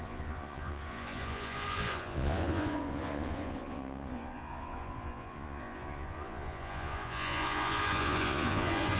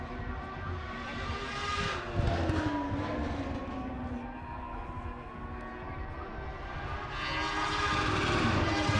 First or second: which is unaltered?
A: second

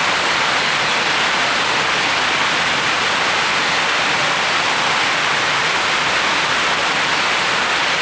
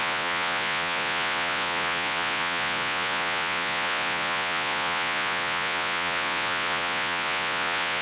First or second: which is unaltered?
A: first